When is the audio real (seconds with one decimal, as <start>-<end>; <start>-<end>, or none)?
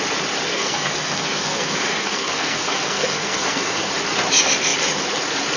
0.0-0.5; 3.9-5.6